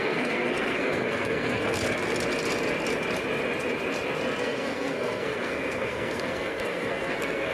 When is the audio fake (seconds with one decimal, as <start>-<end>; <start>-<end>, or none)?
0.0-1.8; 4.4-7.5